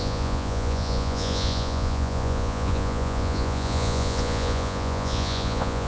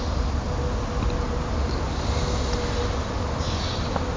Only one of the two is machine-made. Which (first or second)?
first